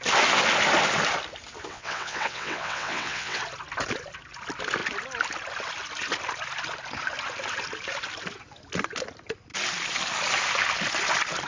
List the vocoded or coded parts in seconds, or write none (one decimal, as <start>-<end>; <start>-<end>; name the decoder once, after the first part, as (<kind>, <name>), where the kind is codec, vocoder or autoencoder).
1.7-3.4 (vocoder, WaveNeXt)